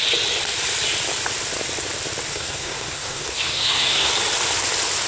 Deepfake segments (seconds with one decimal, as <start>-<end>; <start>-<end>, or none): 2.3-4.1